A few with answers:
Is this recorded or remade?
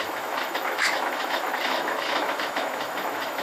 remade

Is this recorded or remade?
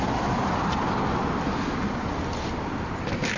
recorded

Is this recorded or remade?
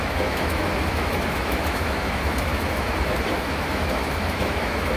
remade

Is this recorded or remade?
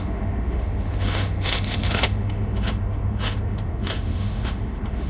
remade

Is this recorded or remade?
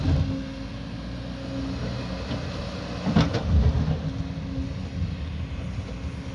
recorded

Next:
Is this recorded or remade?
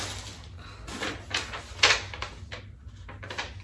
recorded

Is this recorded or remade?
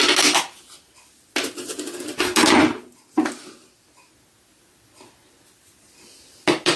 recorded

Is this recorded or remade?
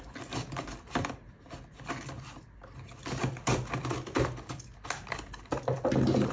recorded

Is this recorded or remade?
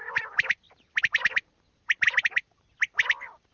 recorded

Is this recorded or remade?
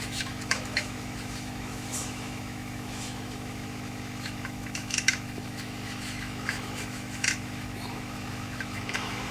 remade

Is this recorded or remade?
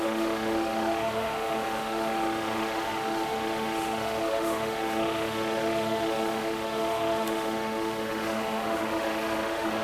remade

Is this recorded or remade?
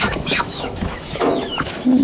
remade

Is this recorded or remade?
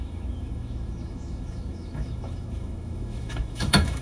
remade